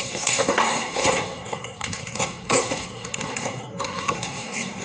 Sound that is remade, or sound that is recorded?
remade